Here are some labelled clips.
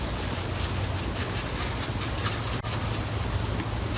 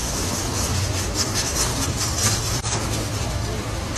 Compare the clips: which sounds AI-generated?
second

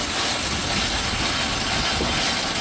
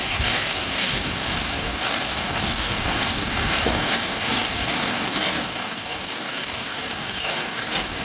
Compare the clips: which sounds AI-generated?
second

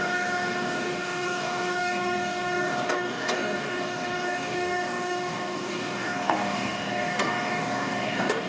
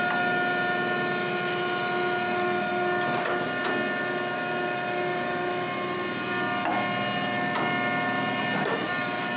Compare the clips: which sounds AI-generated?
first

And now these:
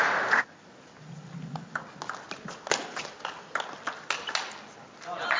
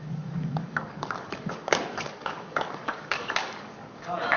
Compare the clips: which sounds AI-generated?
second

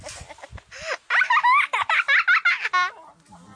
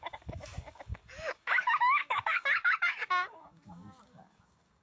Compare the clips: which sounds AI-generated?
second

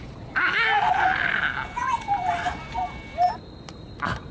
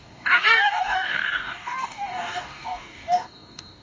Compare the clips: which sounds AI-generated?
second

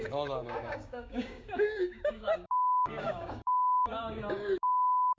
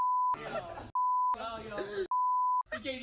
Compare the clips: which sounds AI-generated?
first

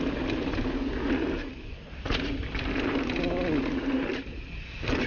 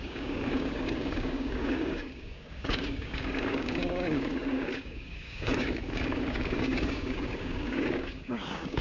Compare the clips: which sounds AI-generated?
second